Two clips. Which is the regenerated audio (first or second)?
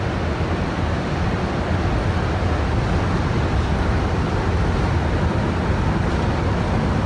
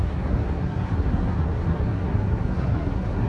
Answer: second